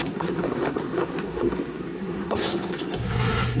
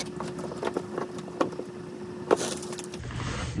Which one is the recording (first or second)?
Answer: second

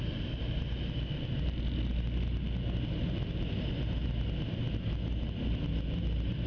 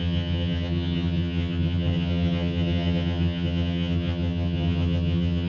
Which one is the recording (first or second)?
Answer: first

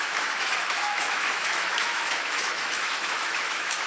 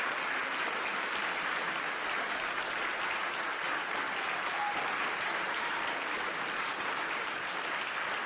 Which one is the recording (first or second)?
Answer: second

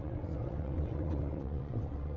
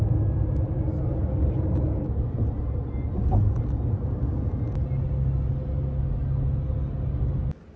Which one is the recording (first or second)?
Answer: second